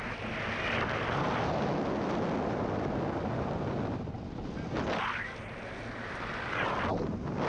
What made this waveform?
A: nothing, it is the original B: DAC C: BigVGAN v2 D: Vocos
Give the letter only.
A